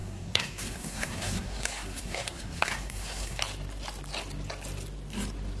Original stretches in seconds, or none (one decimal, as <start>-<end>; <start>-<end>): 3.4-5.6